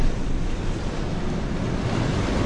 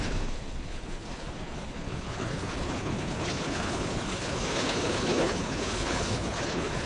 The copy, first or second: second